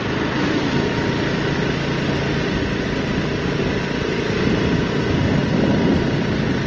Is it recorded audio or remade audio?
recorded